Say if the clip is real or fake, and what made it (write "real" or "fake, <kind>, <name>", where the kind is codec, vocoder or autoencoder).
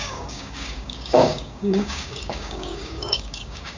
fake, codec, DAC